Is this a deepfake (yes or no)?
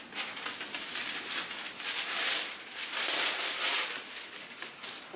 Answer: no